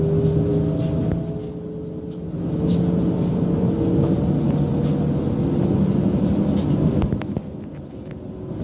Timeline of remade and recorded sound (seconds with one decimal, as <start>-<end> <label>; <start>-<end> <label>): 0.0-8.6 recorded